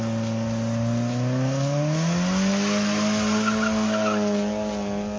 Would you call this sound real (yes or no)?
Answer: yes